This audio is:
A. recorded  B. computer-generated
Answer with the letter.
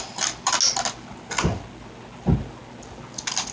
A